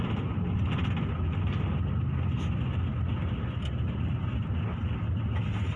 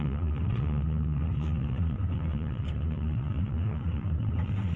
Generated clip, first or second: second